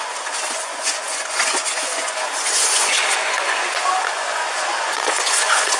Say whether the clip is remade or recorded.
remade